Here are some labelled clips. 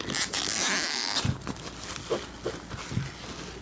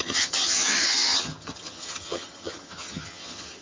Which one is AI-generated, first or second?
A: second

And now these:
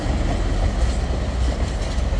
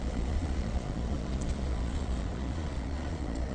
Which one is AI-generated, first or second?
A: second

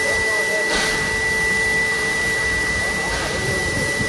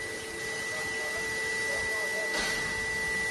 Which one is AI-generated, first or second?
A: first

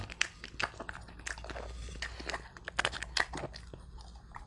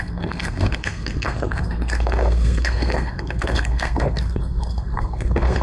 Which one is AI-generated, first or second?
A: second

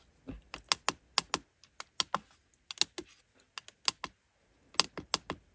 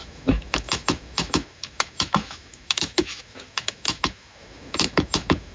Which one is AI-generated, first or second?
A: second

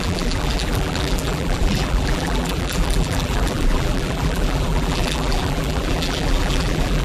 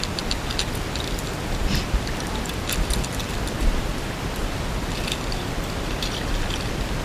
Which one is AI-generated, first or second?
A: first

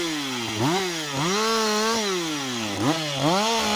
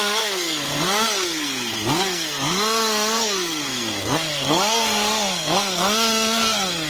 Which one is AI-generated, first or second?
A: second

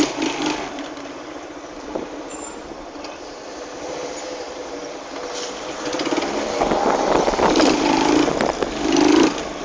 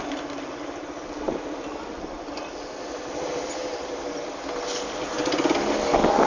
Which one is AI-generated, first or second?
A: first